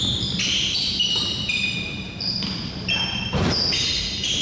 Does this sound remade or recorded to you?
remade